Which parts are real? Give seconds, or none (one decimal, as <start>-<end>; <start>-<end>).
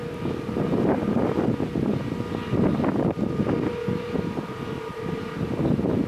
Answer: 0.0-2.7; 3.7-6.1